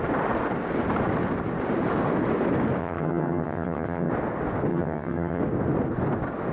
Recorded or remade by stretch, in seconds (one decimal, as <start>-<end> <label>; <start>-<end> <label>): 0.0-2.8 recorded; 2.8-4.1 remade; 4.1-4.7 recorded; 4.7-5.4 remade; 5.4-6.5 recorded